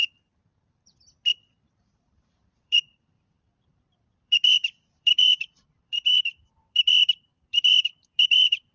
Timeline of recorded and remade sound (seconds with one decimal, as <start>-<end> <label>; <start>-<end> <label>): 0.0-0.9 remade; 0.9-1.8 recorded; 1.8-8.7 remade